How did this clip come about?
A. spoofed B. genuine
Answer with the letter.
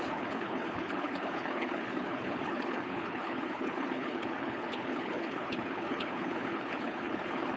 A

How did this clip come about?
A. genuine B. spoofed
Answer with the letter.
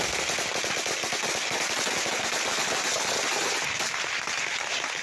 A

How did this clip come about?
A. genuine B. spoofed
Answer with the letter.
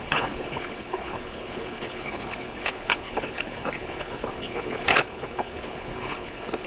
B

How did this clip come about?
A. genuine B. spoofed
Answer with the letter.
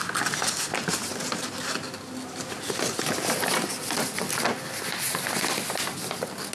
A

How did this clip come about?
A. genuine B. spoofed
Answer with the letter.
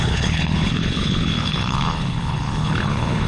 B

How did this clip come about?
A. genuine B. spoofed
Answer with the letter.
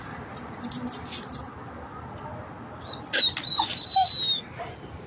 A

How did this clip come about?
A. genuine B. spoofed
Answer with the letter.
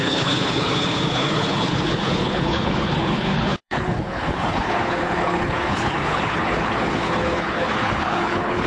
B